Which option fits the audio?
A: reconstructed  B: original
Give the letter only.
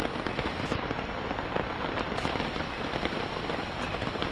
B